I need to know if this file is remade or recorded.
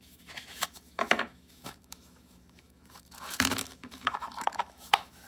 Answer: remade